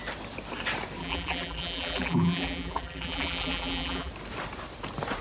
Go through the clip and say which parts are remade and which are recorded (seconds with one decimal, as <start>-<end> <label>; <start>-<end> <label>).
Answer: 0.0-1.0 recorded; 1.0-4.1 remade; 4.1-5.2 recorded